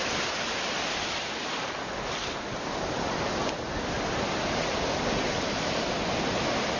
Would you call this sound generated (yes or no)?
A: no